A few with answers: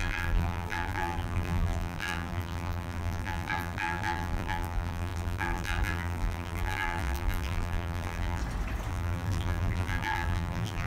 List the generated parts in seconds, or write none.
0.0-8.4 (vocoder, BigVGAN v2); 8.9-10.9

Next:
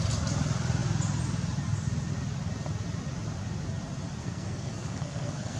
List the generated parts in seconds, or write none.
4.2-5.6 (codec, SNAC)

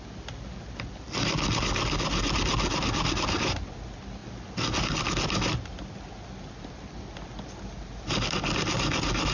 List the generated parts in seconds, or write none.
none

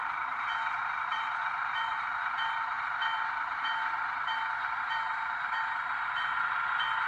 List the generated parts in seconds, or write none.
0.0-4.3 (vocoder, BigVGAN v2)